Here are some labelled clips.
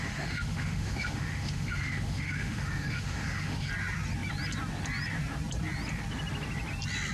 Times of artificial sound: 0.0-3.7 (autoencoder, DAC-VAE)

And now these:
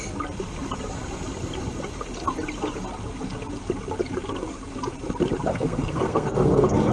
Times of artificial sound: 5.5-6.9 (codec, SNAC)

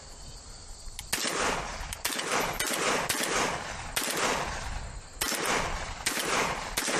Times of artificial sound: none

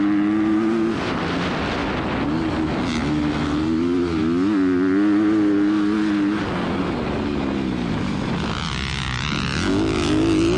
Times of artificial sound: none

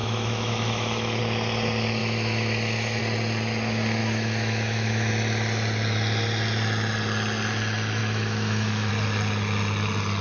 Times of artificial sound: 0.0-1.2 (autoencoder, DAC-VAE); 2.0-3.0; 4.0-5.1; 8.0-8.9

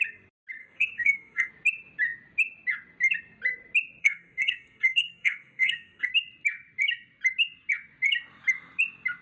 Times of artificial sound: 0.6-1.5 (codec, SNAC); 4.0-6.1